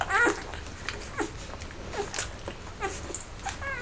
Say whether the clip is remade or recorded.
recorded